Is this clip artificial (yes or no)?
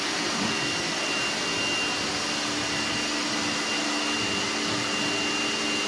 no